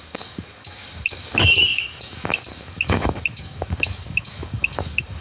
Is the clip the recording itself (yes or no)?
no